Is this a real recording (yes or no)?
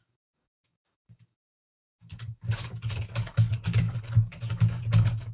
no